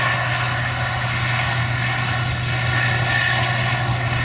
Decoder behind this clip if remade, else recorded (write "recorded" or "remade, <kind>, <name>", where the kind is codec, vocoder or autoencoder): recorded